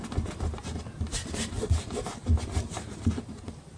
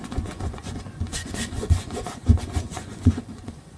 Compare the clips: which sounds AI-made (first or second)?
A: second